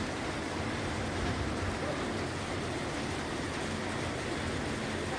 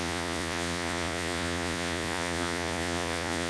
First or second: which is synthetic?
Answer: second